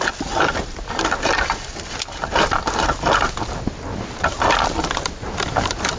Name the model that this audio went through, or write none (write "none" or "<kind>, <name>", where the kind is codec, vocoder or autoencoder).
none